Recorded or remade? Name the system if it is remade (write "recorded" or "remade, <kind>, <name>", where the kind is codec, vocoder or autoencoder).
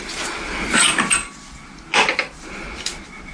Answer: recorded